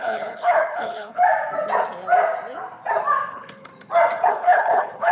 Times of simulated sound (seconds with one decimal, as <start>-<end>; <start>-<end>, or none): 0.0-1.2; 3.3-3.7; 4.3-5.1